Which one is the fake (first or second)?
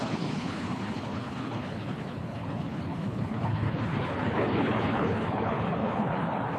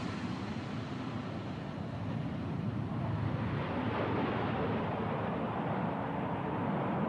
first